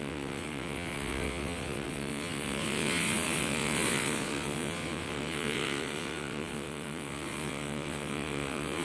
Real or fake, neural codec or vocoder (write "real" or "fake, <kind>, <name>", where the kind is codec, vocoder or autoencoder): fake, vocoder, WaveNeXt